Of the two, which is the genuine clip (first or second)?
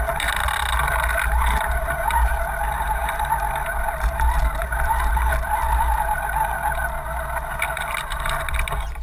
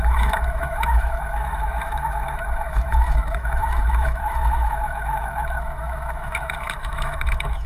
first